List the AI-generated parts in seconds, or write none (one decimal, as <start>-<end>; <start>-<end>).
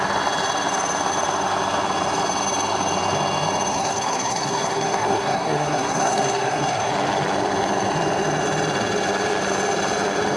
3.7-6.9